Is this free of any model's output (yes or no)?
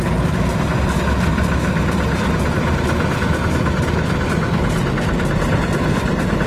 yes